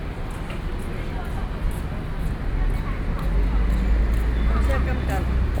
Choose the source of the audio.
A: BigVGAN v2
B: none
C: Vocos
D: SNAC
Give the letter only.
B